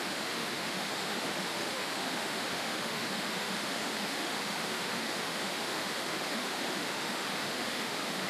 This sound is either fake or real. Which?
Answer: fake